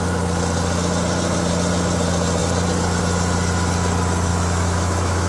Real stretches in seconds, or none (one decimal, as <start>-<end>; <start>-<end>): 0.0-4.3